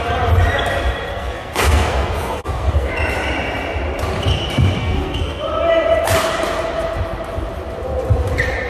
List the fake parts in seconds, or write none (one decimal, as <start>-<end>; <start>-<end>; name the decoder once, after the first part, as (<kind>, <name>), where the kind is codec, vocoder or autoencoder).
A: 1.1-2.9 (codec, SNAC); 4.8-5.4